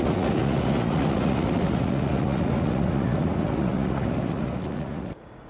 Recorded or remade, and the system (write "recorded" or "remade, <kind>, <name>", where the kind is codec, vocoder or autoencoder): remade, vocoder, Vocos